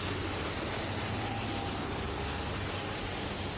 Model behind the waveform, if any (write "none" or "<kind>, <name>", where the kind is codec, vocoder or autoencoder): none